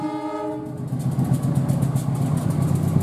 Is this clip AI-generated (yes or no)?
no